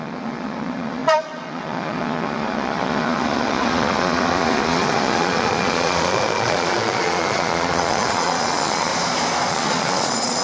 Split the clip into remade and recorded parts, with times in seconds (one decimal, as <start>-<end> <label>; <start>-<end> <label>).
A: 0.0-8.9 remade; 8.9-9.5 recorded; 9.5-10.4 remade